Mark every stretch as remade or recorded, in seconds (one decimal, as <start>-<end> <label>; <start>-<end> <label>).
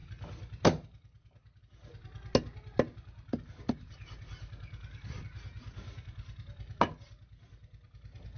0.0-8.4 recorded